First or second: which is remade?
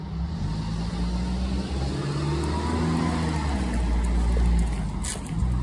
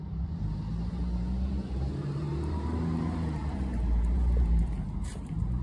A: second